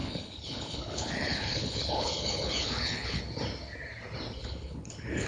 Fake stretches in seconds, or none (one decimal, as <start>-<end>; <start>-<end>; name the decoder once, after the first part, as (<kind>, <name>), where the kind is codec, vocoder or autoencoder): 0.0-3.2 (codec, HILCodec); 4.4-5.3